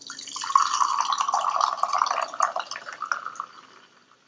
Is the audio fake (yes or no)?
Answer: no